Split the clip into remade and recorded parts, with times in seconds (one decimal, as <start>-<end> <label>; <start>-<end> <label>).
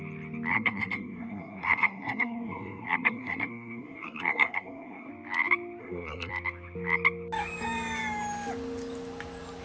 0.0-0.5 recorded; 0.5-5.1 remade; 5.1-5.8 recorded; 5.8-6.3 remade; 6.3-9.6 recorded